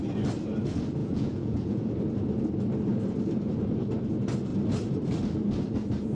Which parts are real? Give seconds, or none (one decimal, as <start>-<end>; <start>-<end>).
0.0-1.0; 1.9-6.1